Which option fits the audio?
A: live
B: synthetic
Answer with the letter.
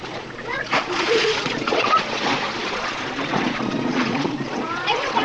B